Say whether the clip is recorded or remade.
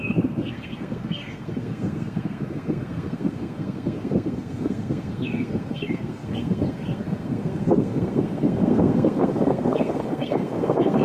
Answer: remade